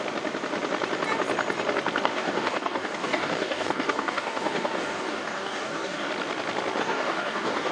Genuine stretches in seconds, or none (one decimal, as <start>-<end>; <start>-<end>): 0.0-2.1; 6.1-6.8